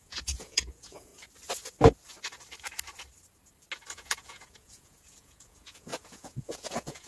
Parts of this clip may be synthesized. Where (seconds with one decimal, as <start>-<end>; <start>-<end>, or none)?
0.0-1.1; 3.9-7.1